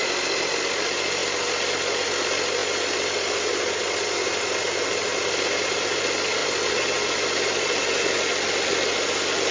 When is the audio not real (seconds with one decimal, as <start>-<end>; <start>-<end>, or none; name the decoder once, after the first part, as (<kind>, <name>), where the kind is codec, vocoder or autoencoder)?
none

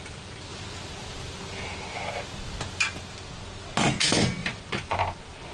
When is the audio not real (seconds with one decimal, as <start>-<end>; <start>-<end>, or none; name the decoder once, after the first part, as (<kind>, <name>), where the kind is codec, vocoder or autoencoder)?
4.4-5.0 (vocoder, Vocos)

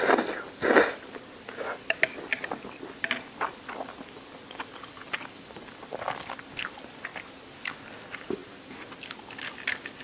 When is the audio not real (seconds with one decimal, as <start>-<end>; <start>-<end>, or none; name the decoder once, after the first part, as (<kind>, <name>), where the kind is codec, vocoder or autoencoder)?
none